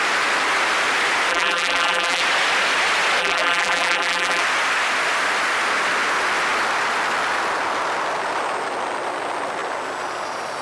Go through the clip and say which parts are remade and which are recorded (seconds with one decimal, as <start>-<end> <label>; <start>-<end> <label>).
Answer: 0.0-1.3 recorded; 1.3-2.2 remade; 2.2-3.2 recorded; 3.2-4.4 remade; 4.4-10.6 recorded